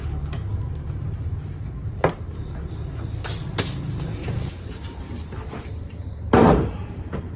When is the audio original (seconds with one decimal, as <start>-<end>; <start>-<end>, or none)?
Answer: 2.7-4.2